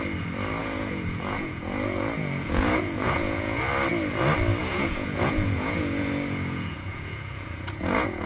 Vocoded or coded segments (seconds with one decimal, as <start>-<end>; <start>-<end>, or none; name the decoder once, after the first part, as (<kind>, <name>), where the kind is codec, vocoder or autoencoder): 0.6-3.6 (vocoder, Vocos); 4.6-8.3